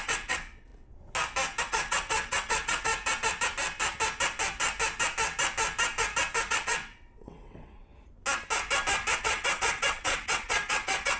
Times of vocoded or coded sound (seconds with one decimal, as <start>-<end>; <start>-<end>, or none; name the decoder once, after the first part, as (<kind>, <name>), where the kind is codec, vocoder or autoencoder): 0.0-0.7 (vocoder, WaveNeXt); 1.6-2.9; 6.5-7.9; 9.2-11.2